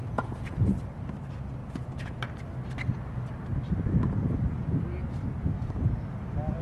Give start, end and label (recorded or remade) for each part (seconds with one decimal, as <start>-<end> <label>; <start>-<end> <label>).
0.0-0.7 remade; 0.7-1.6 recorded; 1.6-2.2 remade; 2.2-6.6 recorded